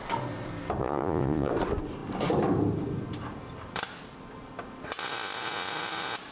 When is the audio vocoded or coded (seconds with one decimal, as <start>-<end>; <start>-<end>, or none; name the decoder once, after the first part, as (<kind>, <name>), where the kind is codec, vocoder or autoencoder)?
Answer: 0.8-1.5 (vocoder, Vocos)

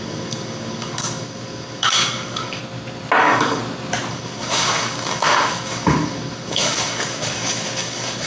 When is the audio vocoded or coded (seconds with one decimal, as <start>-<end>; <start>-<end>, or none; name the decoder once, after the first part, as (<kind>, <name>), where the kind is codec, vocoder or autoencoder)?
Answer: 0.0-2.6 (codec, DAC); 3.2-3.6; 4.1-8.3